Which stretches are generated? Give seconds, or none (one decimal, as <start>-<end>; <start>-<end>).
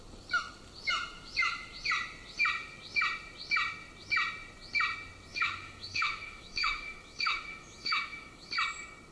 5.3-8.5